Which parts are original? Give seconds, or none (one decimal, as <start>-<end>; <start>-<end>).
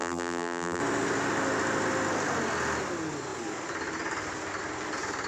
0.8-5.3